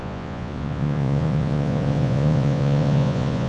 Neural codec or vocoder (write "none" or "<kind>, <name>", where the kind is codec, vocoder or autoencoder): vocoder, Vocos